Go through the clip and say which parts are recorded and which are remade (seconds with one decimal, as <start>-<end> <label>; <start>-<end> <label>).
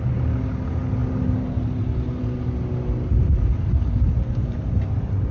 0.0-5.3 recorded